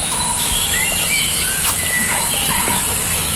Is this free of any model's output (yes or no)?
no